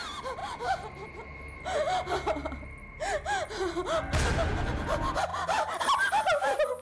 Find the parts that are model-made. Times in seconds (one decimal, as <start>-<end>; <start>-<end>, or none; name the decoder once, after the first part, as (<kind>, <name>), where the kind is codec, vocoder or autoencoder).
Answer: 0.4-1.3 (vocoder, BigVGAN v2); 5.3-6.2